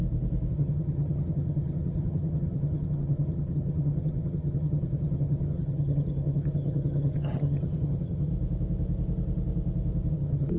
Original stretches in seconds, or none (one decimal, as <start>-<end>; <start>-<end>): 0.0-0.5; 8.3-10.1